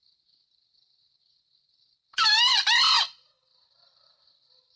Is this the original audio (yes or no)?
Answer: yes